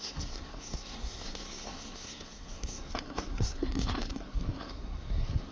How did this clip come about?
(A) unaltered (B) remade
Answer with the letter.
B